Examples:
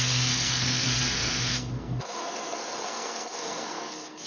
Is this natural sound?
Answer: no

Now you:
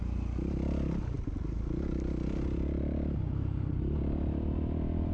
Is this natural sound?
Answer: yes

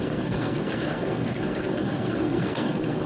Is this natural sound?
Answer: no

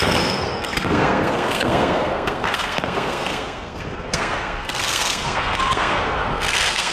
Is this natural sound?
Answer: no